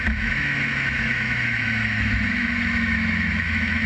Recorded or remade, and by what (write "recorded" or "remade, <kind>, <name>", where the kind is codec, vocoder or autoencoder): remade, autoencoder, DAC-VAE